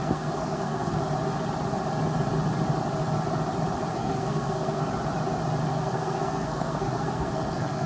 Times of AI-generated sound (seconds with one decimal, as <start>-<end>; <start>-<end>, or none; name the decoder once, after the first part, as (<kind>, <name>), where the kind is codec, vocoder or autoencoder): 0.0-1.0 (codec, SNAC); 3.9-4.8; 5.7-7.9